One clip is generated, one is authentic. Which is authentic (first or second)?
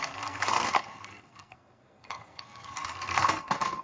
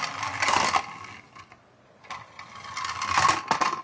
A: second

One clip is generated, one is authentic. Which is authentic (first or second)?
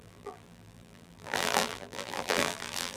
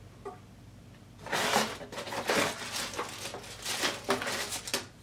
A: second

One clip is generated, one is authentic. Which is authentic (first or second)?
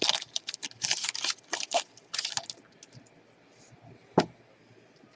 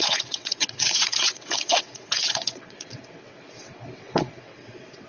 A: first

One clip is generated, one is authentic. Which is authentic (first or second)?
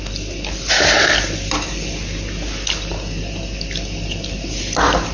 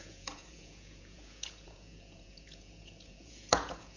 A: first